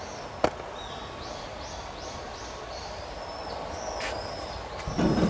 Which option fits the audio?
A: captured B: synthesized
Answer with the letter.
A